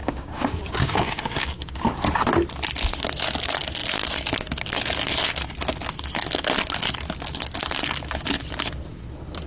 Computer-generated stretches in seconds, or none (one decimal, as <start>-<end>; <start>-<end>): 0.0-1.8